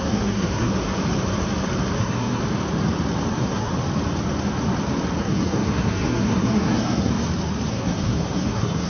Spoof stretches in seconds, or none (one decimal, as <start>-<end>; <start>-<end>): 0.0-0.7; 2.0-2.4; 3.3-3.7; 5.2-7.1; 7.7-8.9